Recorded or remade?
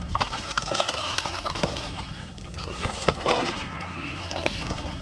remade